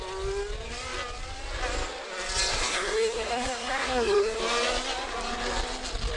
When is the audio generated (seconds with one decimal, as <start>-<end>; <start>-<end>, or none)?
2.5-4.4